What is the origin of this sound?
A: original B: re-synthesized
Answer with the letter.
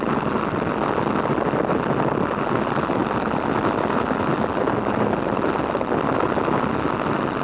A